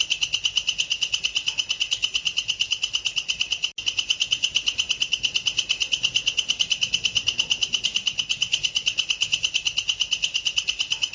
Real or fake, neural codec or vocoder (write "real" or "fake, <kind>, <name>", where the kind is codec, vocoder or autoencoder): real